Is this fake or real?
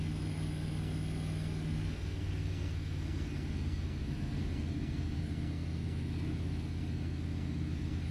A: fake